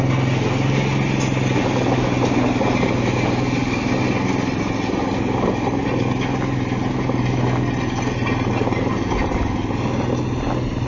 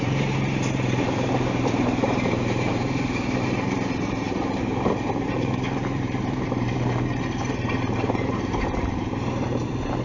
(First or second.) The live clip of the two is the first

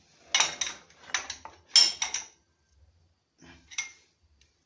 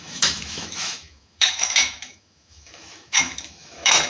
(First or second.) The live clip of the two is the first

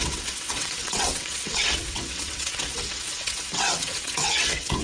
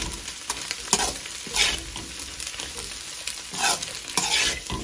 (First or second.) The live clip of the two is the second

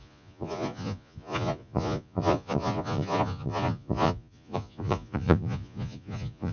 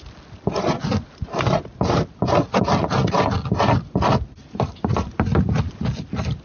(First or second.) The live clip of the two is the second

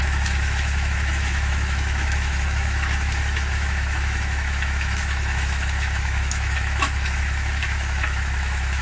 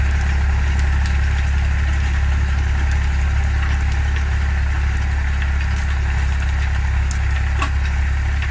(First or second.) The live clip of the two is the second